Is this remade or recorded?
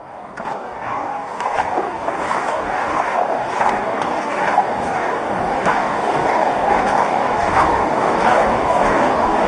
remade